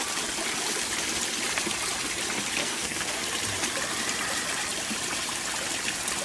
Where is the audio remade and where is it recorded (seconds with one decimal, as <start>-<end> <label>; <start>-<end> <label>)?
0.0-2.6 recorded; 2.6-3.2 remade; 3.2-6.2 recorded